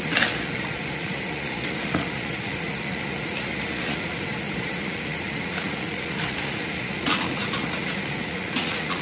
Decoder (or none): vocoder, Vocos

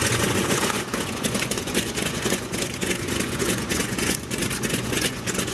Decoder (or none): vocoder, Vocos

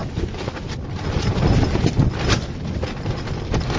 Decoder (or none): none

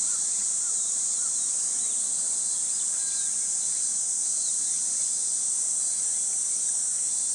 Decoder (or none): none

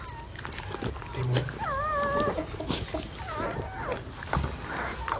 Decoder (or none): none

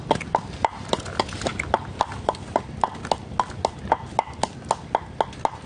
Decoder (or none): none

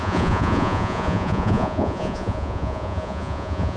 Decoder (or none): vocoder, Vocos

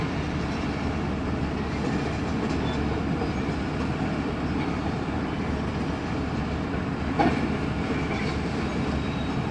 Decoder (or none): none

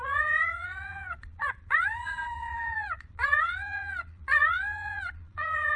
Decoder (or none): vocoder, Vocos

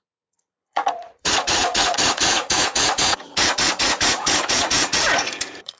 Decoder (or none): vocoder, Vocos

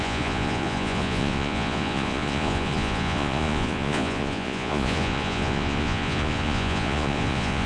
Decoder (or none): vocoder, Vocos